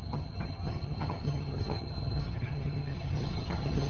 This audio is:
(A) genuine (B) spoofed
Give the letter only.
B